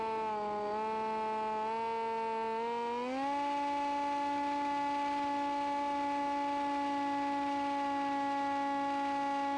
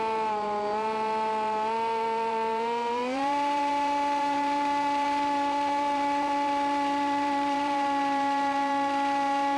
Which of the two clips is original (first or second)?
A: first